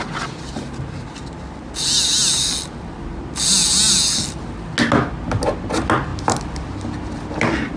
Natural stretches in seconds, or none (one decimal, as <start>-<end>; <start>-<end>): 0.0-7.8